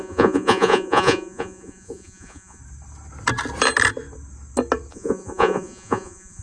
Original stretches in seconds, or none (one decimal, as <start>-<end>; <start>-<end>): 2.6-4.9